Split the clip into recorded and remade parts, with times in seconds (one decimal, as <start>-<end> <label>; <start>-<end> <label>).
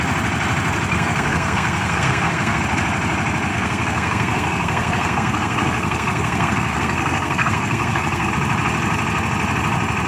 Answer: 0.0-0.9 recorded; 0.9-2.6 remade; 2.6-3.5 recorded; 3.5-8.3 remade; 8.3-10.1 recorded